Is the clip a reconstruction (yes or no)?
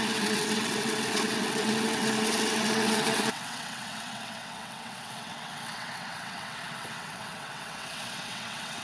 yes